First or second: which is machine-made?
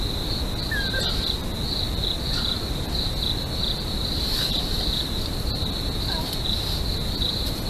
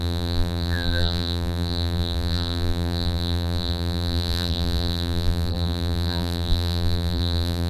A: second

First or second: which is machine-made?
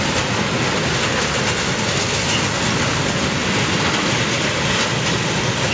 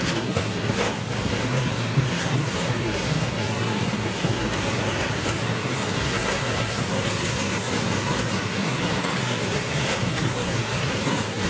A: second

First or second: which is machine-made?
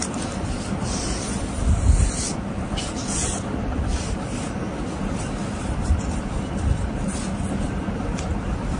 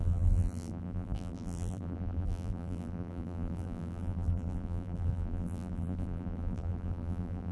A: second